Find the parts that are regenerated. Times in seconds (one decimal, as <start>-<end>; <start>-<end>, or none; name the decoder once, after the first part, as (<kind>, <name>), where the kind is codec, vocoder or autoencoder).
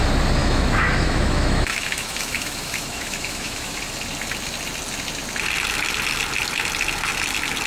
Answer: 0.4-3.8 (autoencoder, DAC-VAE)